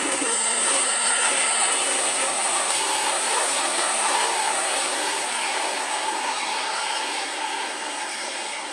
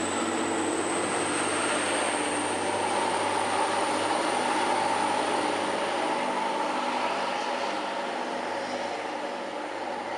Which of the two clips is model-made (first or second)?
first